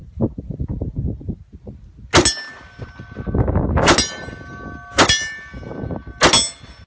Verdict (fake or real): real